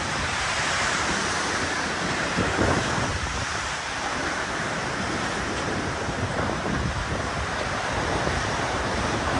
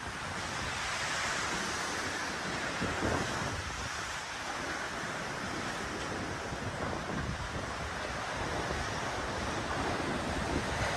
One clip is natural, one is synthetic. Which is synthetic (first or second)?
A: first